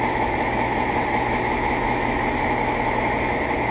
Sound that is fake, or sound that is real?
fake